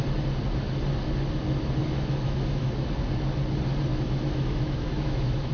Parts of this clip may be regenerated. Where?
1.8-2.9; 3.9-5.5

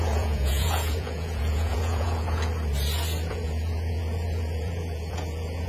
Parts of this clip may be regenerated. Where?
0.0-2.5; 3.3-5.7